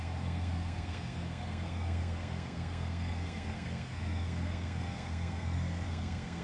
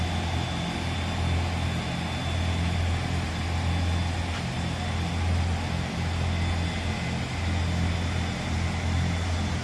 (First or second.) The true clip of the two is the second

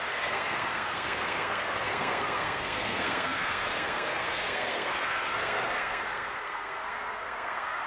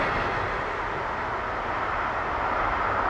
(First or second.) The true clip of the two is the second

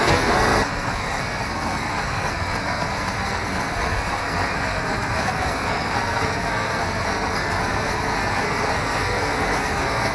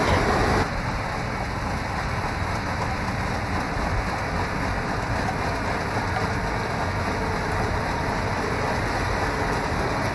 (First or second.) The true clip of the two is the second